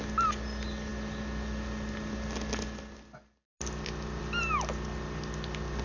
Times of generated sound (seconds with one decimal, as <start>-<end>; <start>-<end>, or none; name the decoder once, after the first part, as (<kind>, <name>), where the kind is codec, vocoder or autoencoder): none